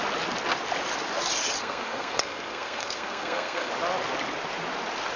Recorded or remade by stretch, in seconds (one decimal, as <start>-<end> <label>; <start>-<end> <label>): 0.0-1.6 recorded; 1.6-3.7 remade; 3.7-5.2 recorded